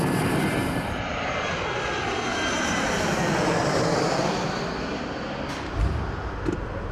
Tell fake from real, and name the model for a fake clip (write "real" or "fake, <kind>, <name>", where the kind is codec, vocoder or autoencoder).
real